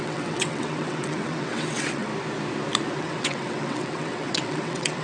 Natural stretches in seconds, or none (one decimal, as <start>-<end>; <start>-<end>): 2.1-3.0